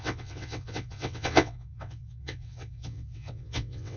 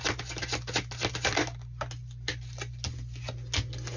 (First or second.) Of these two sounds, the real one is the second